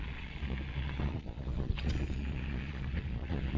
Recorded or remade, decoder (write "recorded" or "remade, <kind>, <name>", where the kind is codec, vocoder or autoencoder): remade, vocoder, Vocos